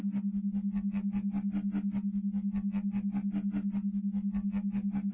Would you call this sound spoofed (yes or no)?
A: no